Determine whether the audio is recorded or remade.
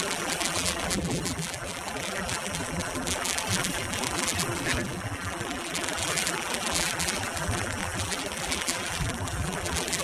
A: remade